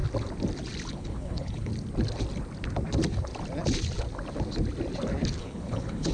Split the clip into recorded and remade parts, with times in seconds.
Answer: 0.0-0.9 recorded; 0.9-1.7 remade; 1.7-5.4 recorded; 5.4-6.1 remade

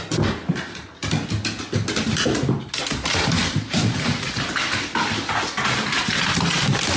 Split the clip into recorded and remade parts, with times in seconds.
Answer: 0.0-7.0 recorded

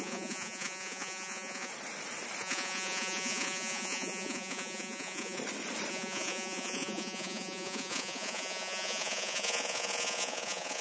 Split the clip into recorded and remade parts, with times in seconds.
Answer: 0.0-1.7 remade; 1.7-2.4 recorded; 2.4-5.4 remade; 5.4-5.9 recorded; 5.9-10.8 remade

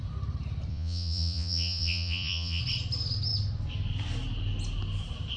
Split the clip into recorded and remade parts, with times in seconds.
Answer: 0.0-0.7 recorded; 0.7-2.6 remade; 2.6-5.4 recorded

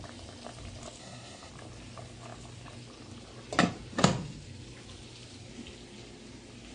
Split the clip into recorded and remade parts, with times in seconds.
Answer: 0.0-1.0 recorded; 1.0-1.5 remade; 1.5-6.7 recorded

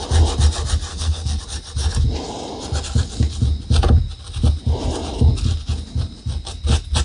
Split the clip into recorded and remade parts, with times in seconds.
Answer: 0.0-0.9 recorded; 0.9-1.4 remade; 1.4-7.0 recorded

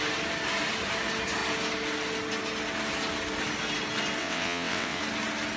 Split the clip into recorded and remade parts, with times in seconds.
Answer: 0.0-4.2 recorded; 4.2-5.0 remade; 5.0-5.6 recorded

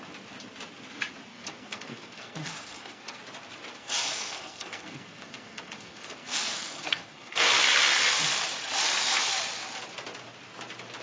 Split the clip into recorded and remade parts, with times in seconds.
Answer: 0.0-1.3 recorded; 1.3-3.2 remade; 3.2-3.7 recorded; 3.7-7.5 remade; 7.5-11.0 recorded